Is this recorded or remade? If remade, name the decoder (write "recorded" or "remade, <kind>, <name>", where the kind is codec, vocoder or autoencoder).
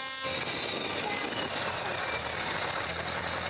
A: recorded